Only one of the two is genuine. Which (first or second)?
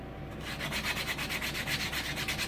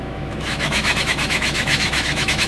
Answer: first